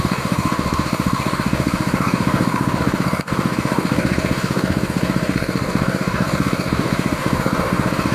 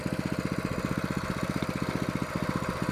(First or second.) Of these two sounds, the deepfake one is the first